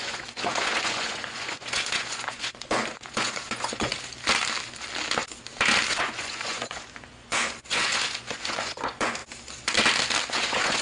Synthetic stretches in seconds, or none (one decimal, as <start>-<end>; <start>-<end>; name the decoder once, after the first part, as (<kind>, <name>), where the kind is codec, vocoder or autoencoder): 0.0-3.9 (vocoder, Vocos); 5.9-9.2; 10.3-10.8